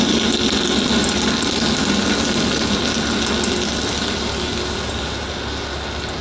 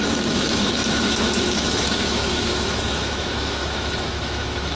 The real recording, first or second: first